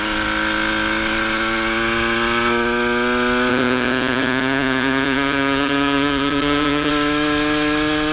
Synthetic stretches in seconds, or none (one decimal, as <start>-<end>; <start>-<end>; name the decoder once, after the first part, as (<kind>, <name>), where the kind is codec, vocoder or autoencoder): 3.5-6.9 (vocoder, HiFi-GAN)